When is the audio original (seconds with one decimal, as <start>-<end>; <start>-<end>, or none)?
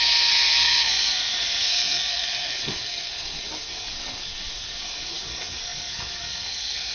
none